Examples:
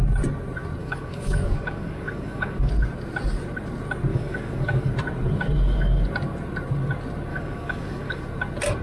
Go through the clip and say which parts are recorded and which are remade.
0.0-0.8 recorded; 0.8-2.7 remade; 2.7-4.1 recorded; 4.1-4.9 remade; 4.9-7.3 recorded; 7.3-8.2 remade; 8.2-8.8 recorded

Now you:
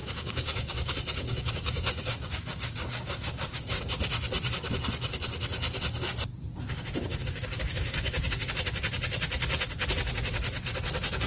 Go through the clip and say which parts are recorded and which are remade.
0.0-3.8 remade; 3.8-7.1 recorded; 7.1-8.5 remade; 8.5-11.3 recorded

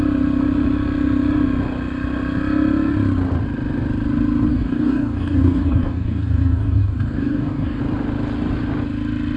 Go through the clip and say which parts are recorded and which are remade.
0.0-4.5 recorded; 4.5-7.8 remade; 7.8-9.4 recorded